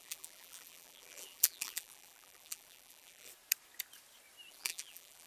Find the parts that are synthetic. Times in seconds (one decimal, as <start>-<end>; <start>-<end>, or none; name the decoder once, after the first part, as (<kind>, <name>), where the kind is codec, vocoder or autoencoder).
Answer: 0.0-3.3 (vocoder, BigVGAN v2); 4.5-5.3